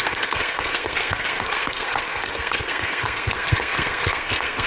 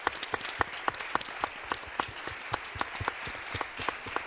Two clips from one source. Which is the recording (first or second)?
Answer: second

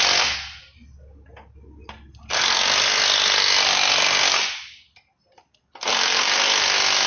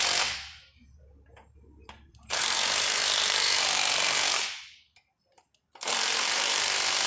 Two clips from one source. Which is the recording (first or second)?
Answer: first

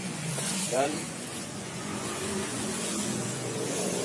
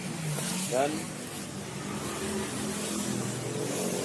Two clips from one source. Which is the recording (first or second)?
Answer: second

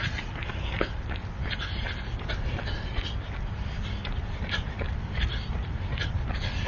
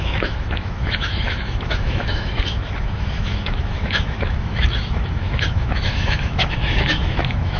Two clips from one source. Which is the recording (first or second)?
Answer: first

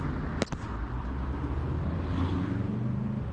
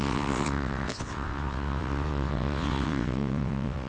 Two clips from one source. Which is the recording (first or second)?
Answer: first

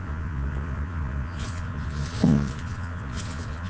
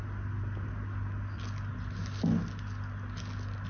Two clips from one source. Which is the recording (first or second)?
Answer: second